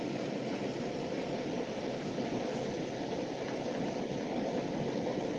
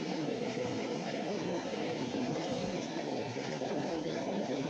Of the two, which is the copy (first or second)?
second